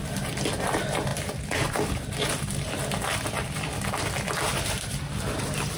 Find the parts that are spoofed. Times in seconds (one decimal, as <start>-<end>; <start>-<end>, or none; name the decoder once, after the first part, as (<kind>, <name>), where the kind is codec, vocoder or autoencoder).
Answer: 0.0-5.8 (vocoder, BigVGAN v2)